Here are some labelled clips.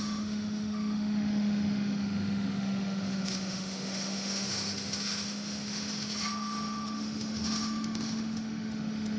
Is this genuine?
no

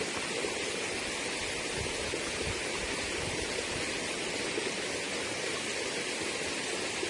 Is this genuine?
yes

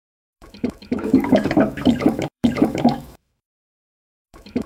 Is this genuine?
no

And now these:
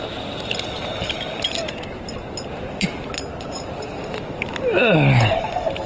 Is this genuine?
yes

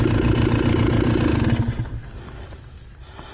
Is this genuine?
yes